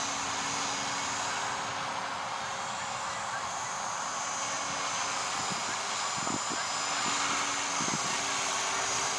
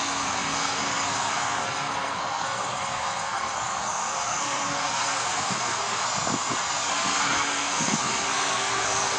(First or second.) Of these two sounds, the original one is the first